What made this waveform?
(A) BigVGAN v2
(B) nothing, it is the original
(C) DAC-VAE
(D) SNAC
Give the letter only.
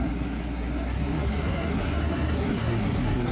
D